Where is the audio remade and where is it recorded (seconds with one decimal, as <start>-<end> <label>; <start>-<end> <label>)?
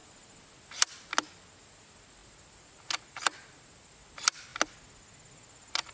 0.0-5.9 recorded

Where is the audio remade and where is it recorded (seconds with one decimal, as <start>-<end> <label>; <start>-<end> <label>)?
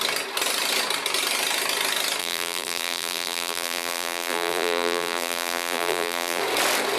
0.0-2.2 recorded; 2.2-6.4 remade; 6.4-7.0 recorded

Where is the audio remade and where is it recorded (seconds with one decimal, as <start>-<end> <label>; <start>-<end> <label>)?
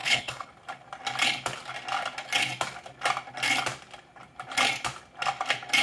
0.0-0.5 remade; 0.5-5.8 recorded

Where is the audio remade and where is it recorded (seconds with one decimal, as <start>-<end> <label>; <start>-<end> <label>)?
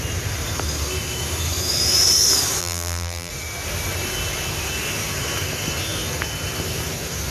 0.0-2.6 recorded; 2.6-3.3 remade; 3.3-7.3 recorded